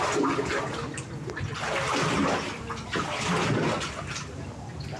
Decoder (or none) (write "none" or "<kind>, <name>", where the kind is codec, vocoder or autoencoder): none